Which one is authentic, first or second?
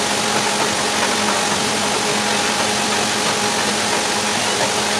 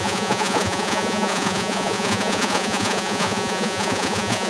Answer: first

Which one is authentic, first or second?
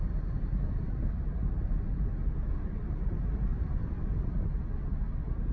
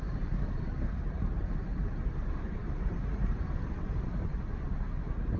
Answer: first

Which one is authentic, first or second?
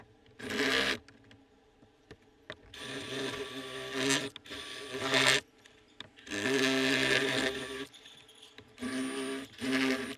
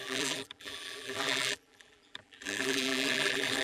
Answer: first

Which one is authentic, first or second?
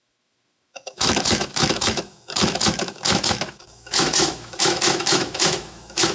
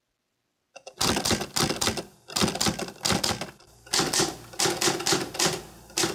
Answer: second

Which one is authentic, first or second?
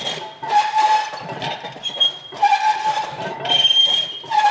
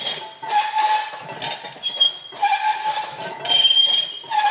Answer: second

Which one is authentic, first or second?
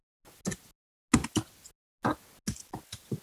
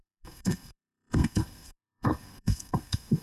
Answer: first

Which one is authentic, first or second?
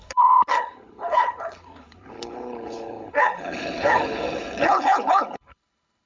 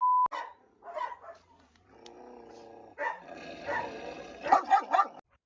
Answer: second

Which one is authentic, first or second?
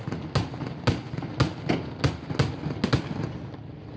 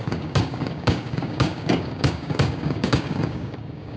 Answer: first